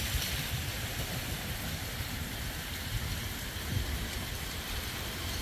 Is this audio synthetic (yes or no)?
no